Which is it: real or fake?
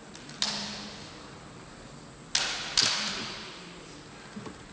real